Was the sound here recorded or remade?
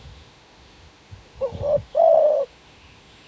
remade